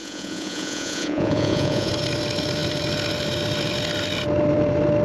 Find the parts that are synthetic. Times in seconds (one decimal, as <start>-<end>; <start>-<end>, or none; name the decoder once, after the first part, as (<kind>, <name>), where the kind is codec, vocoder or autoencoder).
0.0-1.9 (vocoder, Vocos)